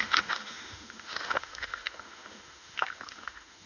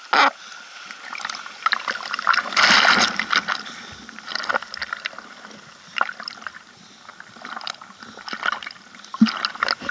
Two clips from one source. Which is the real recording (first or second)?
second